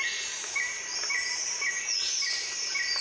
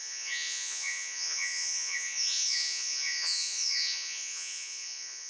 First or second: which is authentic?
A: first